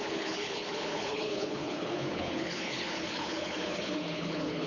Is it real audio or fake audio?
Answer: fake